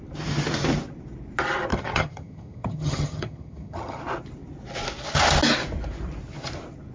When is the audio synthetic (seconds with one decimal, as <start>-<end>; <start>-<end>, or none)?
1.7-4.0